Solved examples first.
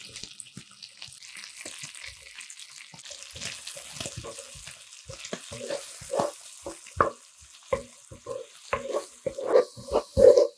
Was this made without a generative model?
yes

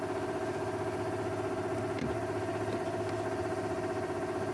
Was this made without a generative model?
yes